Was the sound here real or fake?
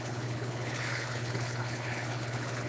fake